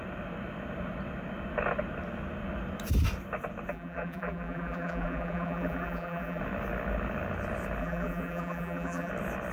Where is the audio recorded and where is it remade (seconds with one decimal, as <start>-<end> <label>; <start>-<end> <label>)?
0.0-3.7 recorded; 3.7-6.4 remade; 6.4-7.8 recorded; 7.8-9.1 remade; 9.1-9.5 recorded